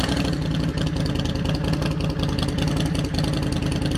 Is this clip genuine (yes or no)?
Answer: yes